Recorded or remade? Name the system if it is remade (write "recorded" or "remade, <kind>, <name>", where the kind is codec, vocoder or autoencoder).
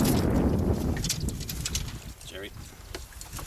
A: recorded